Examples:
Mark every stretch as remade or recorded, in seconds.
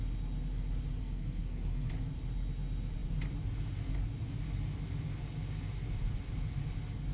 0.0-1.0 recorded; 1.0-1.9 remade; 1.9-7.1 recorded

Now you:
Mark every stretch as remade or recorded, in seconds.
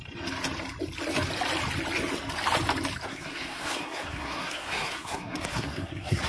0.0-3.1 recorded; 3.1-6.3 remade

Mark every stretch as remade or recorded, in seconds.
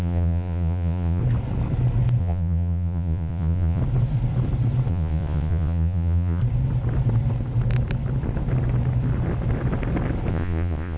0.0-1.2 remade; 1.2-2.2 recorded; 2.2-3.8 remade; 3.8-4.9 recorded; 4.9-6.4 remade; 6.4-10.3 recorded; 10.3-11.0 remade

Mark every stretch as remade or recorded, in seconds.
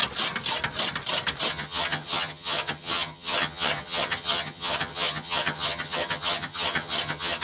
0.0-1.5 recorded; 1.5-7.4 remade